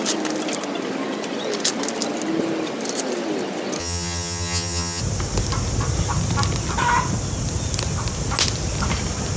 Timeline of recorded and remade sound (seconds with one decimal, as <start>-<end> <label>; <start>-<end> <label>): 0.0-3.8 recorded; 3.8-5.0 remade; 5.0-9.4 recorded